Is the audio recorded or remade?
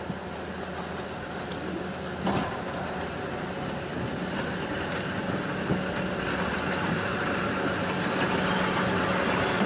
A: recorded